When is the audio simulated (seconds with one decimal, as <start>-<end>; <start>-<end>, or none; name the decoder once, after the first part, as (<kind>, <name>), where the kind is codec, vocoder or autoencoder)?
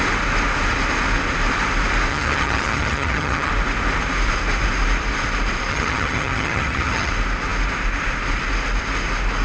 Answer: 2.1-3.5 (vocoder, HiFi-GAN); 5.7-7.1